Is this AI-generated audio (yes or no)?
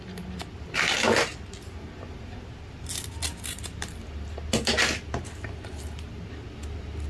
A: no